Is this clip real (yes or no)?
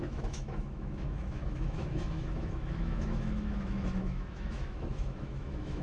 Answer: no